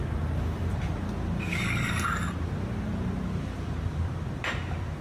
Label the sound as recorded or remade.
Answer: recorded